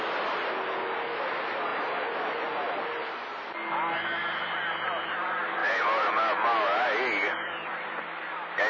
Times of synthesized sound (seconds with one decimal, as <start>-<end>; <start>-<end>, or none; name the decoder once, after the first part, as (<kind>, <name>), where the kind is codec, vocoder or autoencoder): none